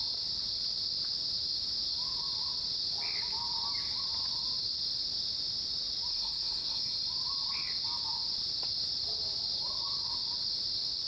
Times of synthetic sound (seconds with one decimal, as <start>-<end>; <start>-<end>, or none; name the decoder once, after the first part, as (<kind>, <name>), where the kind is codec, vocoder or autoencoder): 6.1-6.9 (codec, SNAC)